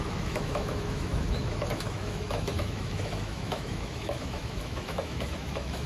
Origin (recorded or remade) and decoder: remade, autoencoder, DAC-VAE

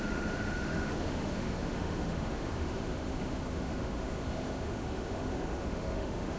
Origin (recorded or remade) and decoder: remade, autoencoder, DAC-VAE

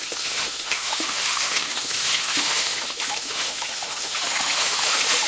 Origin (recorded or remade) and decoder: remade, autoencoder, DAC-VAE